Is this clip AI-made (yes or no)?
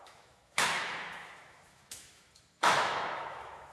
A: yes